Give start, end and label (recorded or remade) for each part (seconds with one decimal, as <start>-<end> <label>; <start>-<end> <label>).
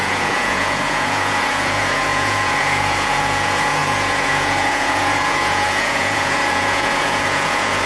0.0-7.9 remade